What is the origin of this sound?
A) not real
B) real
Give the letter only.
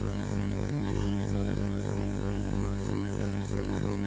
A